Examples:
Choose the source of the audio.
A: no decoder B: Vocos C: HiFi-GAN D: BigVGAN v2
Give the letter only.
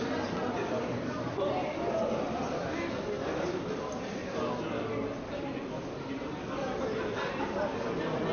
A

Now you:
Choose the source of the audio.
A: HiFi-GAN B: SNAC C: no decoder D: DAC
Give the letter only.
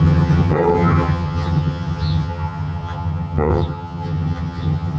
A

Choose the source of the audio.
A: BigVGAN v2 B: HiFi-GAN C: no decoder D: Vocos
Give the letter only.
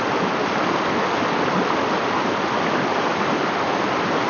C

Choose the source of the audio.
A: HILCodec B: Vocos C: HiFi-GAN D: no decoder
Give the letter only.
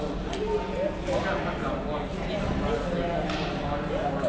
D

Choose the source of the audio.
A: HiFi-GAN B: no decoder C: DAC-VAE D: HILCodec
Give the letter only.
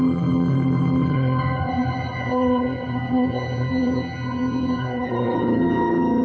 A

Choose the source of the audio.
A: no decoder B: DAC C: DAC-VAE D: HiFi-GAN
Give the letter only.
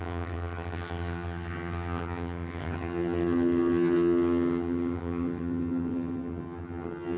D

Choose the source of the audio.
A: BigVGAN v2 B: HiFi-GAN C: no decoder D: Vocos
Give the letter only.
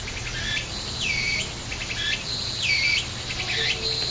C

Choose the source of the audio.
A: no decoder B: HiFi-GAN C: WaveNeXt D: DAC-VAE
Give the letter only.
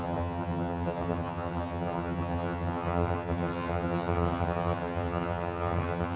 B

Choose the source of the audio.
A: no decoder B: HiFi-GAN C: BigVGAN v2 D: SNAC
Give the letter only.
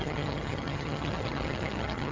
B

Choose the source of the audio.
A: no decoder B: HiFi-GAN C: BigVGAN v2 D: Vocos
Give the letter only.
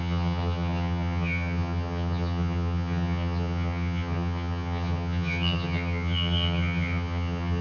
B